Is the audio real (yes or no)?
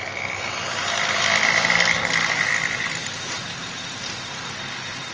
yes